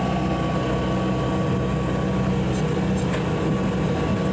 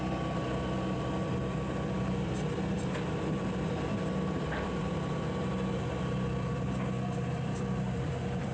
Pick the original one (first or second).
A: first